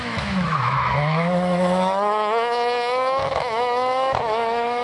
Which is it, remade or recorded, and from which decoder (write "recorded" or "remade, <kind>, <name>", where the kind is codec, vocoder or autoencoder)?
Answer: remade, autoencoder, DAC-VAE